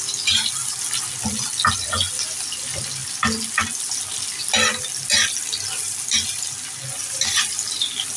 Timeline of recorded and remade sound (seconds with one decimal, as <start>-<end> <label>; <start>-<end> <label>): 0.0-8.2 recorded